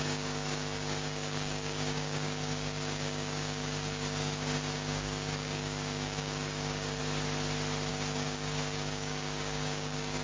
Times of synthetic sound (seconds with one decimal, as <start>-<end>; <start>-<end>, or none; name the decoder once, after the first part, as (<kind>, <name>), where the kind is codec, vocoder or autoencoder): 0.0-7.0 (codec, DAC); 7.9-10.2